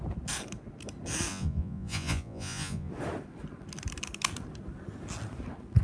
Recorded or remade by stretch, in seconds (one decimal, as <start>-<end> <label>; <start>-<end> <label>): 0.0-1.3 recorded; 1.3-2.9 remade; 2.9-5.8 recorded